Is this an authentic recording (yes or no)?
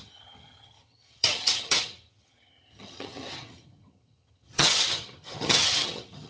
no